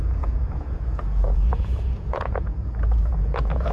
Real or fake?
fake